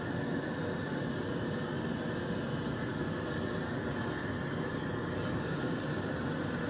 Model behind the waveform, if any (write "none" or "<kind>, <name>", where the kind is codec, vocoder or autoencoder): none